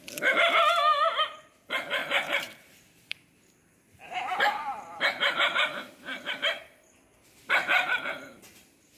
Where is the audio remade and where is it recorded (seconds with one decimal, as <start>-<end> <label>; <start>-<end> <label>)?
0.0-2.0 recorded; 2.0-6.3 remade; 6.3-9.0 recorded